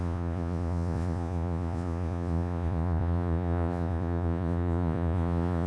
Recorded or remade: remade